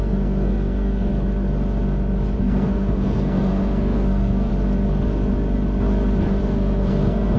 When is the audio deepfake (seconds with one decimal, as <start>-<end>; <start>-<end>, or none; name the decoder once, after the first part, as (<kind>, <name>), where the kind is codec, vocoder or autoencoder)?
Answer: 0.0-1.1 (codec, SNAC); 2.4-4.5; 6.4-7.4